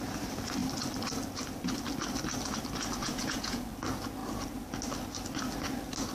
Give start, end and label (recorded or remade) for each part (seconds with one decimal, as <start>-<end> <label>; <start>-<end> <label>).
0.0-3.0 recorded; 3.0-3.6 remade; 3.6-6.1 recorded